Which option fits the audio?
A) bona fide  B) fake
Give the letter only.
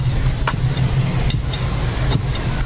A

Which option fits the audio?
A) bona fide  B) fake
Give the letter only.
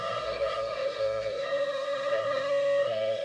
B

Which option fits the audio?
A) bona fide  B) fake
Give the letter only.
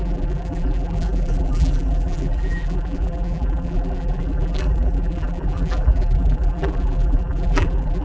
B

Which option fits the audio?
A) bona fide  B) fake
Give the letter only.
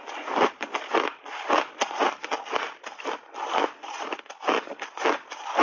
A